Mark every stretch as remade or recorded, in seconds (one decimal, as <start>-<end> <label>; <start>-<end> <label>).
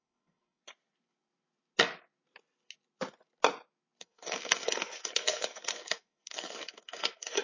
0.0-0.6 remade; 0.6-4.0 recorded; 4.0-7.4 remade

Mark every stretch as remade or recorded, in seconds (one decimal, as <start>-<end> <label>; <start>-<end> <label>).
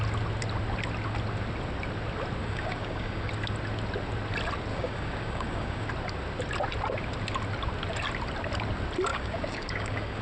0.0-2.4 recorded; 2.4-3.3 remade; 3.3-4.7 recorded; 4.7-5.9 remade; 5.9-9.1 recorded; 9.1-10.2 remade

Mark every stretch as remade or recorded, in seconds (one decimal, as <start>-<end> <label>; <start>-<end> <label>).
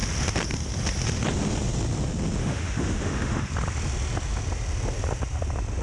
0.0-2.4 recorded; 2.4-3.5 remade; 3.5-5.8 recorded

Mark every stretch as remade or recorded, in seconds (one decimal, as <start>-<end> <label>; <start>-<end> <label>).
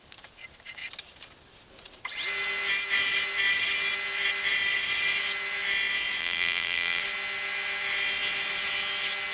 0.0-6.2 recorded; 6.2-7.0 remade; 7.0-9.3 recorded